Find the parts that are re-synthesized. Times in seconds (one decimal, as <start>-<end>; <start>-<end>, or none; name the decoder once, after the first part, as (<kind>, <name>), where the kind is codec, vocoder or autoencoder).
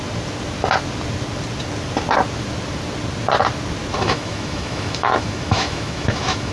3.9-6.5 (autoencoder, DAC-VAE)